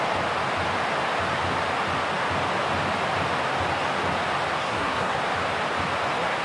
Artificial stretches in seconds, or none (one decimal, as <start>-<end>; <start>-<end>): 4.6-5.2

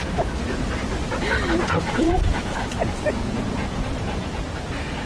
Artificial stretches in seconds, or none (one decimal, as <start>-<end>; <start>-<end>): 1.6-4.4

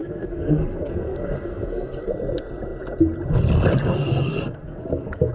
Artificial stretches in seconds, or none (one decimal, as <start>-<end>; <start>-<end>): 0.0-2.1; 3.8-5.3

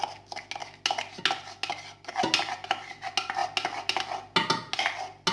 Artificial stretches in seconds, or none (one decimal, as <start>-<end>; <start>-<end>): none

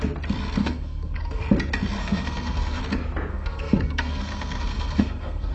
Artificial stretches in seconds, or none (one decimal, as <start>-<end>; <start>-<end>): 0.6-1.4; 2.0-2.8; 3.3-5.5

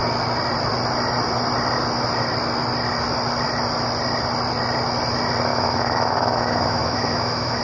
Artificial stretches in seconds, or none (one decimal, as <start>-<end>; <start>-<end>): 5.5-7.6